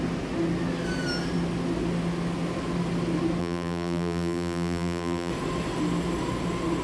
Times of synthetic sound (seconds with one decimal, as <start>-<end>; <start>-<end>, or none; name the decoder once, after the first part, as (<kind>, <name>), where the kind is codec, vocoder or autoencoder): 3.4-5.3 (vocoder, BigVGAN v2)